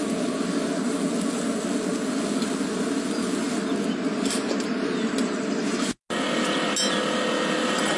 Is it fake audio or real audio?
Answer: real